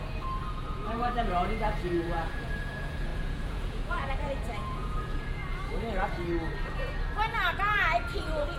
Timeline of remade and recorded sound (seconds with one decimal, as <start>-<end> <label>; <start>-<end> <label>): 0.0-5.4 remade; 5.4-8.2 recorded; 8.2-8.6 remade